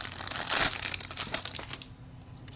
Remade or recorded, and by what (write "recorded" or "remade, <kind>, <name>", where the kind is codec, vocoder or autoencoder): recorded